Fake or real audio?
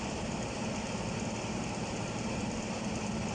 real